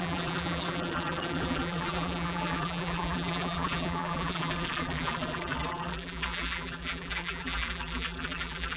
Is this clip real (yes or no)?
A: no